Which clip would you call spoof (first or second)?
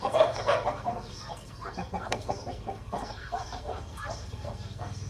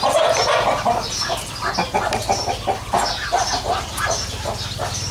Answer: first